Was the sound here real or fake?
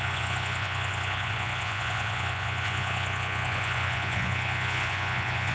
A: fake